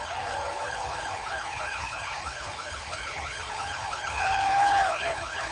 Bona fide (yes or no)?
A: no